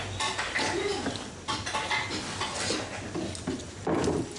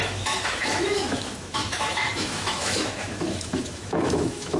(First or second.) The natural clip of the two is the first